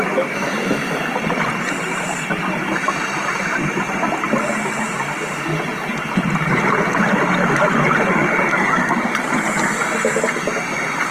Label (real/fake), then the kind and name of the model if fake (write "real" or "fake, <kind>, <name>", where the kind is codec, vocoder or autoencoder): real